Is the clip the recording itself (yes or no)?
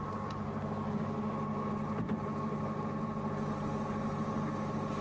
yes